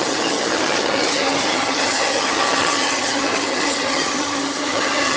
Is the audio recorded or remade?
remade